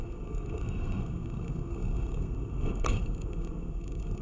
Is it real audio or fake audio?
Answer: fake